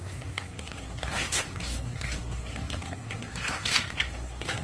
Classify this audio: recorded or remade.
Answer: remade